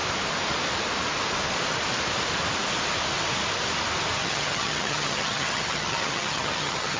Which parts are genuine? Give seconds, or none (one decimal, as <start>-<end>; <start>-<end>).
0.0-4.2